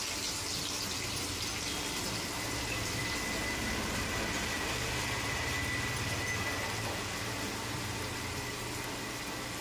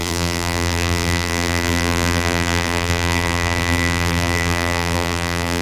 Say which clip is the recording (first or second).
first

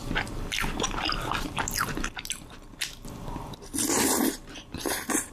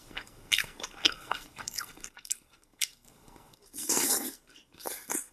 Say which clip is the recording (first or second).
first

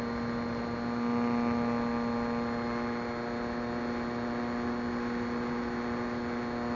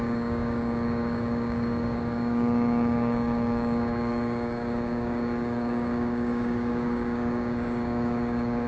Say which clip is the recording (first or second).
first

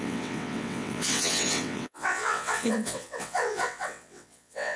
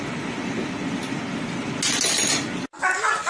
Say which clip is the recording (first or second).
second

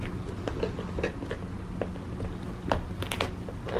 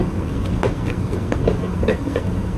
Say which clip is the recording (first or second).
first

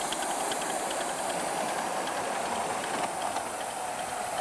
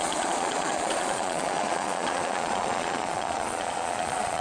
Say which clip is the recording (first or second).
first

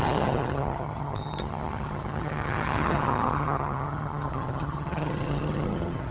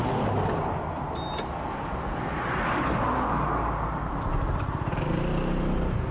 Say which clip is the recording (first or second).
second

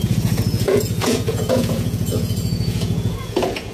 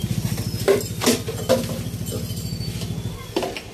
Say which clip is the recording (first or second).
second